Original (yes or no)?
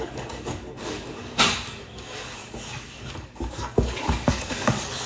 no